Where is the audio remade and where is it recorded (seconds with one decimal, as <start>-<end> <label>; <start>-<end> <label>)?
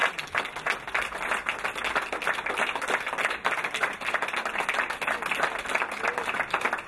0.0-6.9 recorded